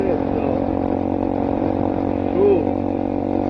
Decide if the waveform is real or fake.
real